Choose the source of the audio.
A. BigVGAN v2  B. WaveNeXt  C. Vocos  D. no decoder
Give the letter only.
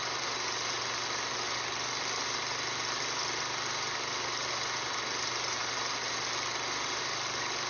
D